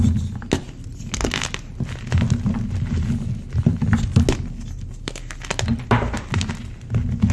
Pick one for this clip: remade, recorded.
recorded